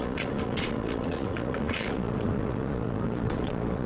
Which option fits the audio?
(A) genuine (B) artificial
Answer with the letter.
B